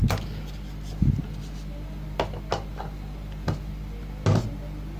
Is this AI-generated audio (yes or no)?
no